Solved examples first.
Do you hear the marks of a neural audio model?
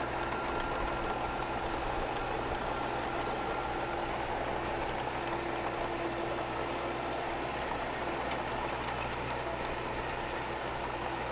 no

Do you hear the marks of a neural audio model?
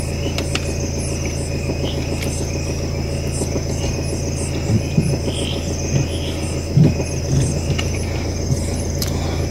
no